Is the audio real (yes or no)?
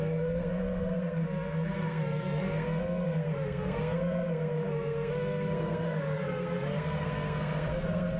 no